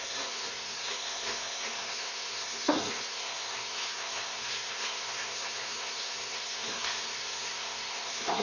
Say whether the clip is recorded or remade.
remade